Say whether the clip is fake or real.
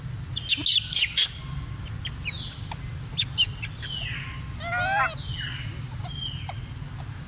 real